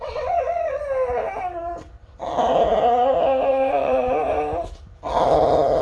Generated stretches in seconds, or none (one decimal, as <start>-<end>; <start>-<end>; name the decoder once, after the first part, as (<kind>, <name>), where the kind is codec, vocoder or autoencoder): 0.0-0.8 (vocoder, WaveNeXt); 3.5-4.2